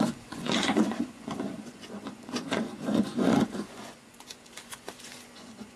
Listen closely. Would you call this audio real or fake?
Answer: fake